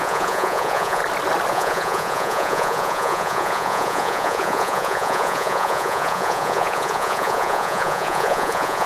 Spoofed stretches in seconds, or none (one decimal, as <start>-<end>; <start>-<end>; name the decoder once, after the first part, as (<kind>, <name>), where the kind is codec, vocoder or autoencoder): 0.0-1.0 (vocoder, Vocos); 1.5-8.9